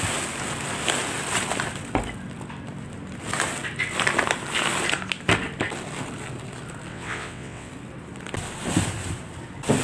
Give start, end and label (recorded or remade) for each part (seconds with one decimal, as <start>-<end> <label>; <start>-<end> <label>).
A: 0.0-6.9 recorded; 6.9-7.7 remade; 7.7-9.8 recorded